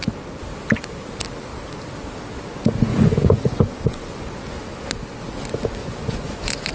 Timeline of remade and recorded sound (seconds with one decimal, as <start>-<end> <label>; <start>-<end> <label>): 0.0-2.9 recorded; 2.9-4.2 remade; 4.2-5.8 recorded; 5.8-6.7 remade